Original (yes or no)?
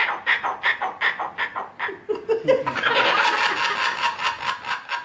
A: yes